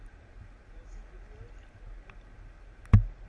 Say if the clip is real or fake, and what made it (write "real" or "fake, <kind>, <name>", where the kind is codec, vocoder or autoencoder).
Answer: real